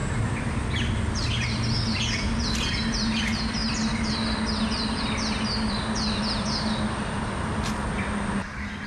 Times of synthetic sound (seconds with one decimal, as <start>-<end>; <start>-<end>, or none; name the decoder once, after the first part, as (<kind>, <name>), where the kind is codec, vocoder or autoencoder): none